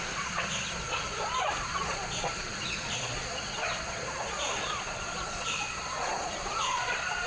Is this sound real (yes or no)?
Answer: no